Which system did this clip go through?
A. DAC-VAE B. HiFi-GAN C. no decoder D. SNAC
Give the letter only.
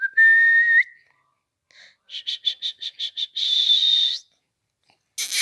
C